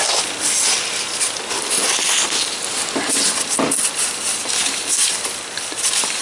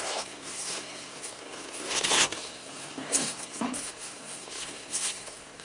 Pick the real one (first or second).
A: first